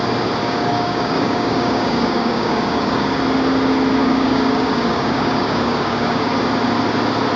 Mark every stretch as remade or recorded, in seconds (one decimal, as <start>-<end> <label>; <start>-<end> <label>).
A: 0.0-0.4 recorded; 0.4-3.2 remade; 3.2-4.0 recorded; 4.0-6.4 remade; 6.4-7.4 recorded